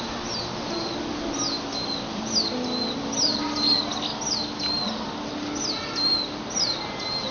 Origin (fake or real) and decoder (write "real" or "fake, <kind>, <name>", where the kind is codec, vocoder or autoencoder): real